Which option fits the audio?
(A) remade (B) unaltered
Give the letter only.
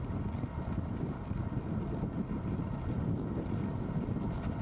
B